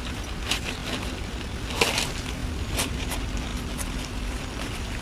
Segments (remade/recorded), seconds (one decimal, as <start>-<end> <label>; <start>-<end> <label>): 0.0-2.4 recorded; 2.4-2.9 remade; 2.9-3.5 recorded; 3.5-5.0 remade